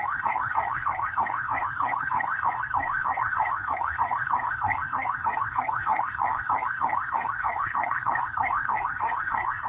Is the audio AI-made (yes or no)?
yes